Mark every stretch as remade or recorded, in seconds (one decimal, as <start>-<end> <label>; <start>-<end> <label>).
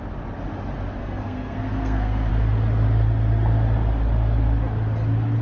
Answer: 0.0-1.0 recorded; 1.0-2.3 remade; 2.3-5.4 recorded